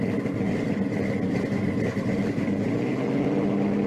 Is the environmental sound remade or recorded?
recorded